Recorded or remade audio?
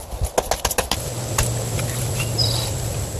recorded